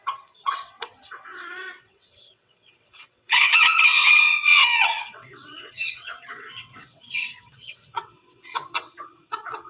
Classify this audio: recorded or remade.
remade